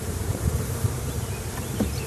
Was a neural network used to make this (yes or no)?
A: yes